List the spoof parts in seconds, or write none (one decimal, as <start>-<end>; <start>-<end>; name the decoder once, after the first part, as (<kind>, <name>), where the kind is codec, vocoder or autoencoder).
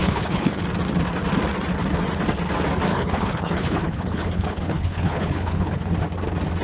0.0-0.6 (codec, HILCodec); 2.9-5.9